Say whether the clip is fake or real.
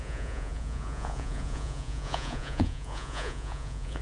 fake